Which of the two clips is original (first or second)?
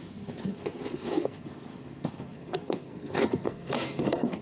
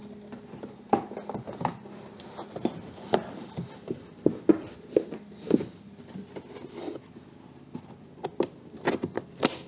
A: second